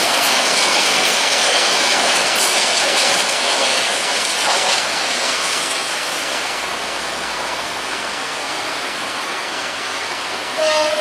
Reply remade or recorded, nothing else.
remade